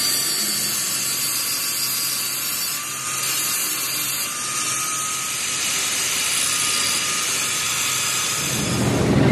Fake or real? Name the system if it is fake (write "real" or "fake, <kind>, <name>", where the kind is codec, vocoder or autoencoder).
real